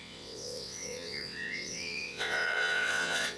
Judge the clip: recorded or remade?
remade